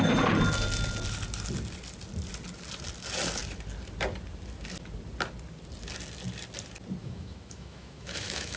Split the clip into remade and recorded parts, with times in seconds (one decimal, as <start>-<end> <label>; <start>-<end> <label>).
0.0-7.0 recorded; 7.0-8.6 remade